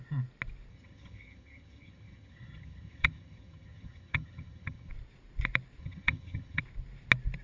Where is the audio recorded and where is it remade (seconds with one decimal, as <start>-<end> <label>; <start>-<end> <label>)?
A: 0.0-0.7 recorded; 0.7-4.9 remade; 4.9-5.8 recorded; 5.8-6.6 remade; 6.6-7.4 recorded